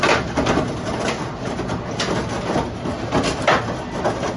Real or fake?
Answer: real